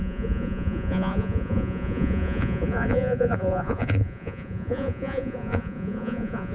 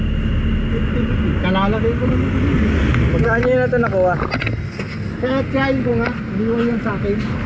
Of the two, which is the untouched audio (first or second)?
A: second